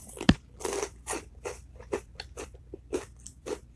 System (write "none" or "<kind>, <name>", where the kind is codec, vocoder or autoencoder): vocoder, BigVGAN v2